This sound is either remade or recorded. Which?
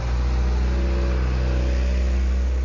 recorded